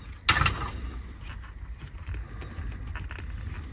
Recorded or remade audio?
recorded